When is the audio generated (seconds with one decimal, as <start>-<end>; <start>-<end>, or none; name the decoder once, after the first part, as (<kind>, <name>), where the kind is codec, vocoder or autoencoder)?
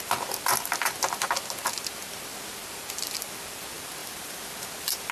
4.0-4.5 (vocoder, BigVGAN v2)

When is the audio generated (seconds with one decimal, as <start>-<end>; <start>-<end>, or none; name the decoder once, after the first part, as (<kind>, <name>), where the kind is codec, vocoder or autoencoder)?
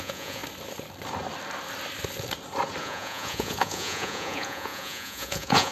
0.0-0.4 (vocoder, Vocos); 2.8-5.7